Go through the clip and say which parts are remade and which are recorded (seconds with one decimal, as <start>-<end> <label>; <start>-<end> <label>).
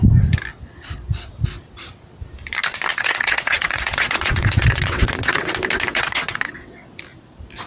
0.0-2.9 recorded; 2.9-5.5 remade; 5.5-5.9 recorded; 5.9-6.9 remade; 6.9-7.7 recorded